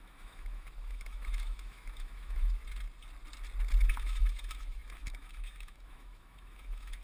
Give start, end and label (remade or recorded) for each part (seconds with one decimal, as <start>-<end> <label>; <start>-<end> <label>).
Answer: 0.0-2.6 remade; 2.6-3.9 recorded; 3.9-7.0 remade